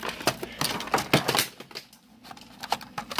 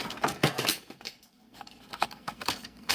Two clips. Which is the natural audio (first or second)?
first